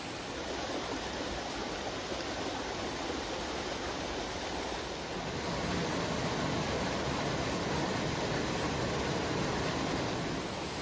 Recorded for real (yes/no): yes